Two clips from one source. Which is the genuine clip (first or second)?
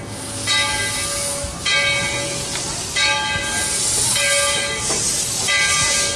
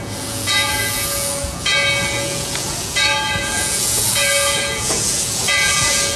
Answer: first